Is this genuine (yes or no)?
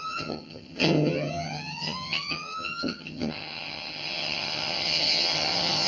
no